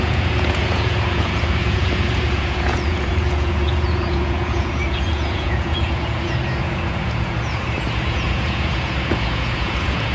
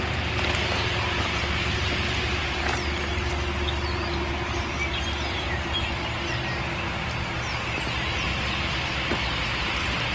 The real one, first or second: second